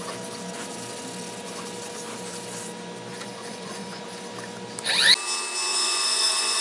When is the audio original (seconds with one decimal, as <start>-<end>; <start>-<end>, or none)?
0.0-3.1; 4.0-5.7